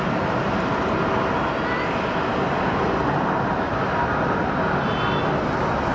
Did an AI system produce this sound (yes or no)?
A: no